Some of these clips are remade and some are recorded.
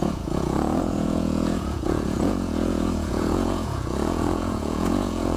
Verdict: remade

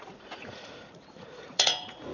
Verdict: remade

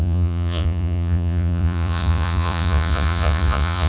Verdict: remade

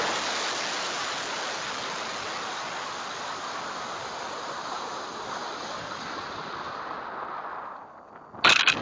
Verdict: recorded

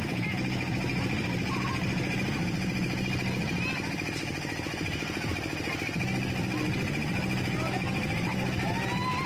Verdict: recorded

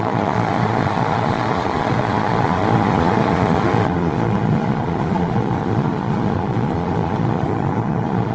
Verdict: remade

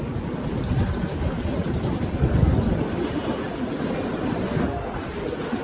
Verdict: recorded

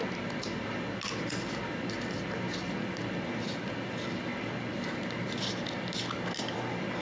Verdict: recorded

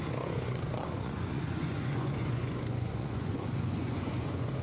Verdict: remade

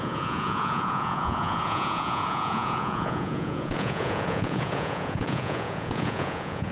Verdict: remade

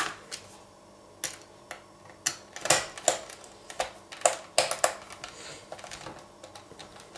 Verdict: recorded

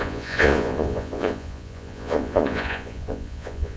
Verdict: remade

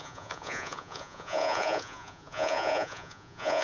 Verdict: remade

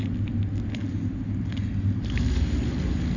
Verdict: recorded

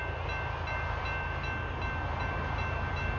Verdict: recorded